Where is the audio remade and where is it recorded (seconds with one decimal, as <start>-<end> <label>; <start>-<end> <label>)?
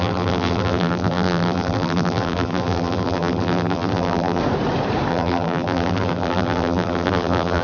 0.0-4.4 remade; 4.4-5.1 recorded; 5.1-7.6 remade